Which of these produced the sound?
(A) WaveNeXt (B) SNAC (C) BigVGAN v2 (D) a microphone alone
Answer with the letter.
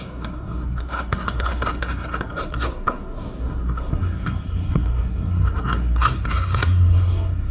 B